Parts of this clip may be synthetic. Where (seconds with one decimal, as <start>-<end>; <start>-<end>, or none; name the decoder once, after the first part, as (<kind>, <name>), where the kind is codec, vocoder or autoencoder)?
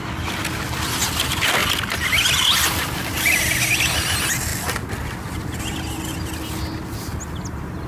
none